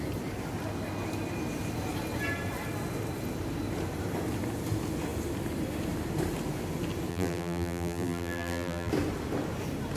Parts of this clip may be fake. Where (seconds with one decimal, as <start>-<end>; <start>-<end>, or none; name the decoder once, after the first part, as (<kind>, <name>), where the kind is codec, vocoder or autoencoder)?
7.1-8.9 (vocoder, BigVGAN v2)